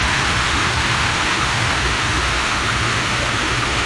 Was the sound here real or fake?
fake